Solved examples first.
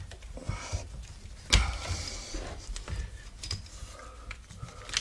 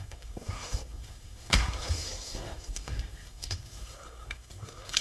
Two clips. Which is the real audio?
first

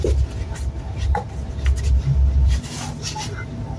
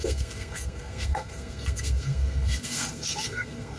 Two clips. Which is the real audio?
first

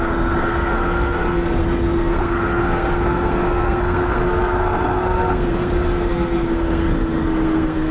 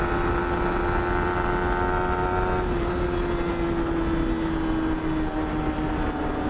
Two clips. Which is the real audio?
second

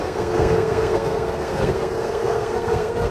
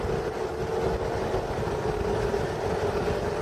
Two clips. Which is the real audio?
second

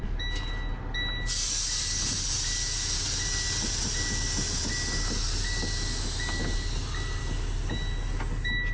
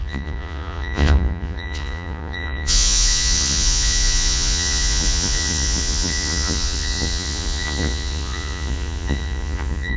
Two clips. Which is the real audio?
first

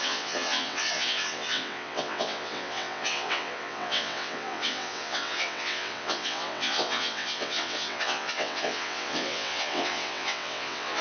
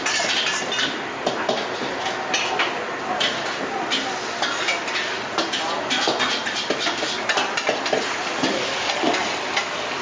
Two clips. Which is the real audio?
second